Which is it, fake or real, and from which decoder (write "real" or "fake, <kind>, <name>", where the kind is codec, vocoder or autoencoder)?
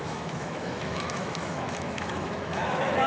fake, autoencoder, DAC-VAE